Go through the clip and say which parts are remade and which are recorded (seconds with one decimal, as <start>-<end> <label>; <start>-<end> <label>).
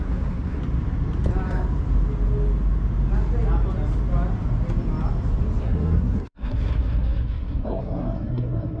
0.0-0.6 remade; 0.6-5.6 recorded; 5.6-8.8 remade